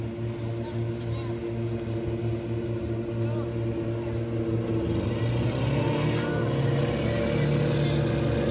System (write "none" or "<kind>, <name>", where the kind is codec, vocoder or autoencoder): none